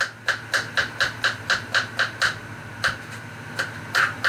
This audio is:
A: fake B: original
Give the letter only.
B